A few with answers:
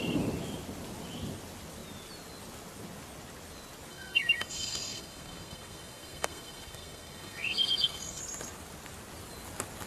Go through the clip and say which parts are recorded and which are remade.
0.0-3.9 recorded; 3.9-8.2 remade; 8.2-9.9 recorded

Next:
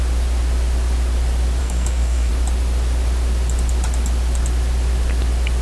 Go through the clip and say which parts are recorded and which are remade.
0.0-1.6 recorded; 1.6-2.3 remade; 2.3-5.6 recorded

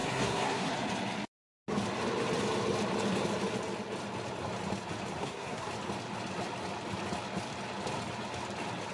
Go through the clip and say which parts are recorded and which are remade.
0.0-0.7 remade; 0.7-5.2 recorded; 5.2-5.7 remade; 5.7-8.9 recorded

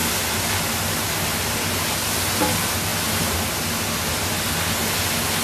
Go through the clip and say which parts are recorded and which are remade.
0.0-5.4 recorded

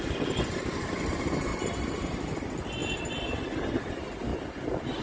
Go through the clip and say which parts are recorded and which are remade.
0.0-5.0 recorded

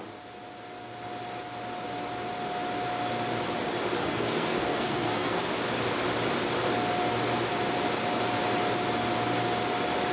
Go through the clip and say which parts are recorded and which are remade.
0.0-4.0 recorded; 4.0-5.4 remade; 5.4-10.1 recorded